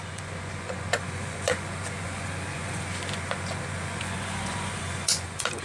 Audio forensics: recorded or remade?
remade